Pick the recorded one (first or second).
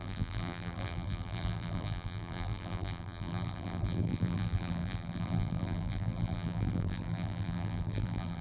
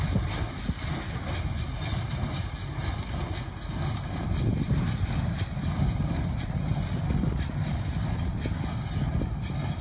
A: second